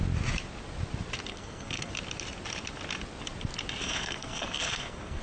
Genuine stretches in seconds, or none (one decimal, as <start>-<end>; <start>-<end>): 0.0-1.3; 1.9-3.8